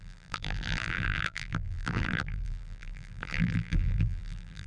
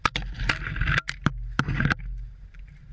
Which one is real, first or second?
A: second